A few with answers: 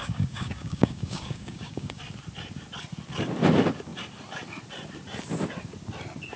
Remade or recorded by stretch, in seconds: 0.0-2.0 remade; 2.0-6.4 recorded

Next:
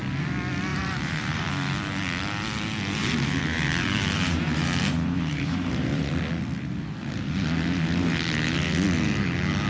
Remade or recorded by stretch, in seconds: 0.0-0.7 recorded; 0.7-1.5 remade; 1.5-3.0 recorded; 3.0-6.1 remade; 6.1-9.7 recorded

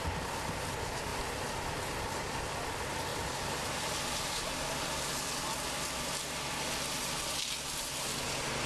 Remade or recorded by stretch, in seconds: 0.0-3.1 recorded; 3.1-4.8 remade; 4.8-8.7 recorded

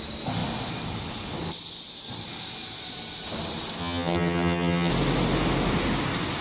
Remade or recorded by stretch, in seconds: 0.0-3.8 recorded; 3.8-4.9 remade; 4.9-6.4 recorded

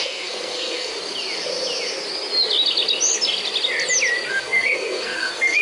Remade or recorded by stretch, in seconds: 0.0-0.9 remade; 0.9-4.3 recorded; 4.3-5.6 remade